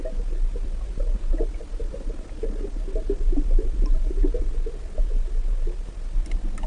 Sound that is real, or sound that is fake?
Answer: real